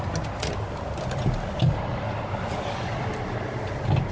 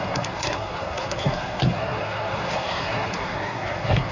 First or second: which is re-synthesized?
second